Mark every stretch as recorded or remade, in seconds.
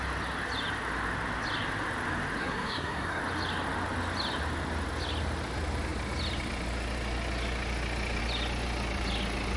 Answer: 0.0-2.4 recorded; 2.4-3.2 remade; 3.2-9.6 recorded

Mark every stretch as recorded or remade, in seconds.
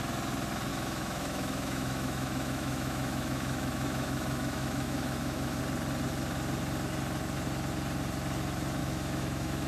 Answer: 0.0-0.7 recorded; 0.7-5.6 remade; 5.6-8.8 recorded; 8.8-9.7 remade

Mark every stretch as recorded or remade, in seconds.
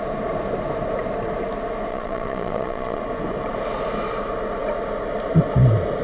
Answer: 0.0-1.9 recorded; 1.9-3.0 remade; 3.0-6.0 recorded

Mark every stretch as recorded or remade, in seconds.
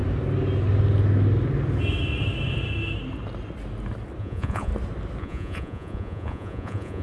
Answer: 0.0-4.2 recorded; 4.2-4.7 remade; 4.7-5.2 recorded; 5.2-7.0 remade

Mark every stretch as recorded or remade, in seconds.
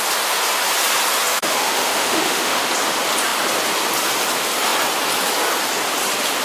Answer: 0.0-1.3 recorded; 1.3-2.7 remade; 2.7-6.4 recorded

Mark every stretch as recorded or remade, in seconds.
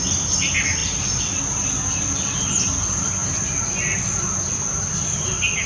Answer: 0.0-5.7 recorded